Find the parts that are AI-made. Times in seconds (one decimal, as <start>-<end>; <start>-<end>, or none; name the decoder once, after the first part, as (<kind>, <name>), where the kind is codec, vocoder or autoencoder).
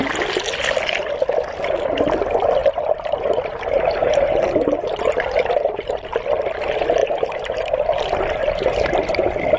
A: 2.6-6.2 (vocoder, BigVGAN v2); 7.0-8.0; 8.4-9.0